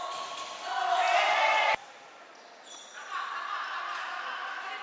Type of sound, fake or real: real